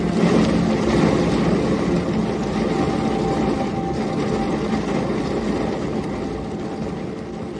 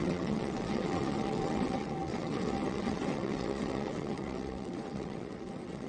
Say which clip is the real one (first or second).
first